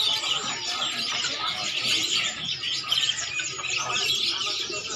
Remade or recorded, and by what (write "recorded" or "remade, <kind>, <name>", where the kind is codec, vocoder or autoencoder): recorded